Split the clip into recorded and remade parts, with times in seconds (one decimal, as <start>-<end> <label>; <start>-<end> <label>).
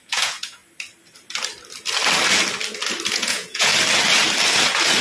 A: 0.0-0.6 remade; 0.6-3.1 recorded; 3.1-3.7 remade; 3.7-5.0 recorded